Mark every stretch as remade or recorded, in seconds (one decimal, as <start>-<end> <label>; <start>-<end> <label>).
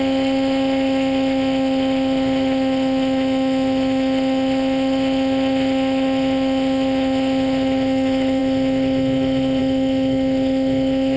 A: 0.0-11.2 remade